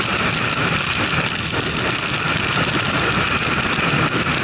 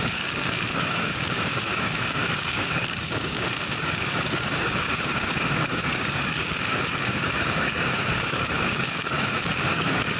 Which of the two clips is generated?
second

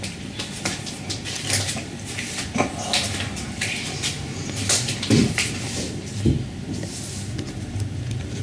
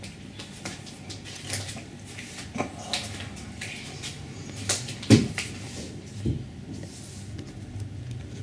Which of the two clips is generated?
first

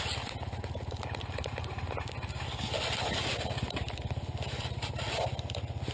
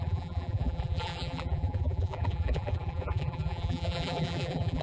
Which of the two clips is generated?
second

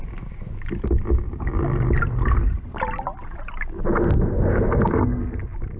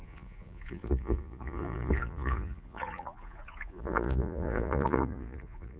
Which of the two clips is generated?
second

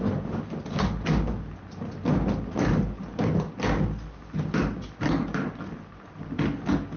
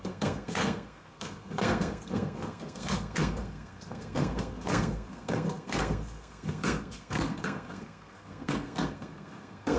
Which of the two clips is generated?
second